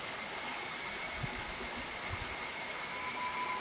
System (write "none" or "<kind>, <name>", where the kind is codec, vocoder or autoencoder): none